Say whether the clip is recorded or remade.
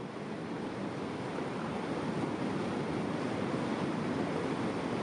recorded